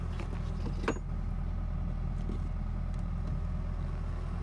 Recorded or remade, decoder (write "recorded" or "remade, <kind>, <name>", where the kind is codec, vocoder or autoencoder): recorded